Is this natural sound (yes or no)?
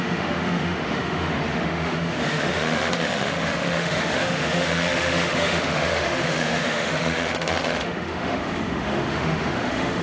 no